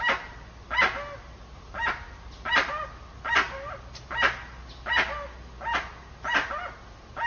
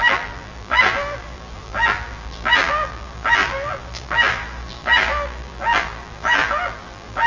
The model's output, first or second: second